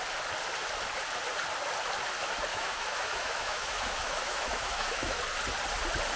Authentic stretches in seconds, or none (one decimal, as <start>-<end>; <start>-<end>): 0.0-2.5; 5.2-6.2